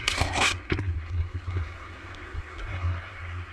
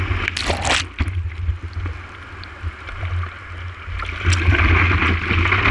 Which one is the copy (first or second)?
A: first